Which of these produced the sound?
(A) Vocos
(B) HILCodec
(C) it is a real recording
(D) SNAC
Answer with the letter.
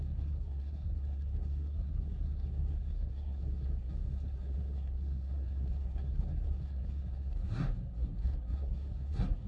D